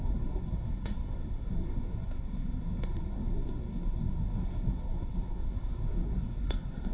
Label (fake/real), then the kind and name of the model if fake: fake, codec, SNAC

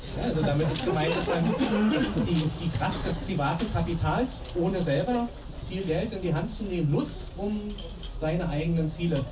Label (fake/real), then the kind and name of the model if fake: real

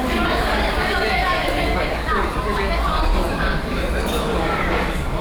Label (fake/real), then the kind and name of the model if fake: fake, codec, DAC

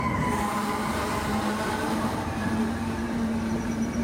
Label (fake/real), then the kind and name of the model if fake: fake, vocoder, BigVGAN v2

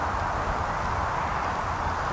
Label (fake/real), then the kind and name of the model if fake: real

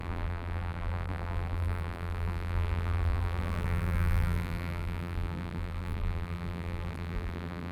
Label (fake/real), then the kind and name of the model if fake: fake, vocoder, BigVGAN v2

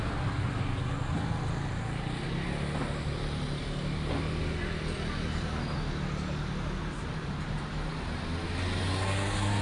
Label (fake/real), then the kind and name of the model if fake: real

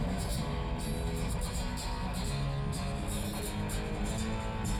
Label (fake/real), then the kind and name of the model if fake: real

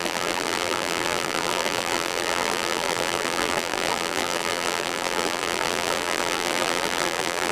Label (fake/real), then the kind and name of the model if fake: fake, vocoder, BigVGAN v2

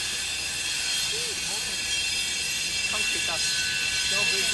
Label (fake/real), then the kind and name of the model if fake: real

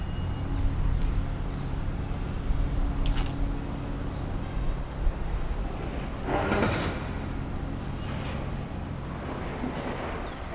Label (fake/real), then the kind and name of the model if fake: real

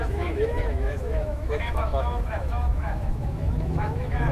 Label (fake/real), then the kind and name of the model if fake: fake, autoencoder, DAC-VAE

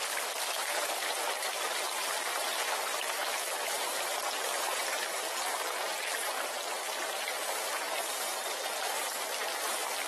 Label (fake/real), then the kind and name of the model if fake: fake, vocoder, BigVGAN v2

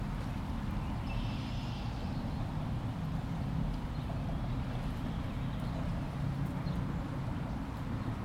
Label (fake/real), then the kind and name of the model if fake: real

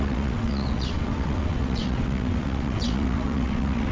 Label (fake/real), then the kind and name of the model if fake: fake, vocoder, WaveNeXt